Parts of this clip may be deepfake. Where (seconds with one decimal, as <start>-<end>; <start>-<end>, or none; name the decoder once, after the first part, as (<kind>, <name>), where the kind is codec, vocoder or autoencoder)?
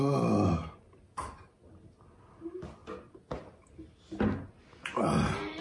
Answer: none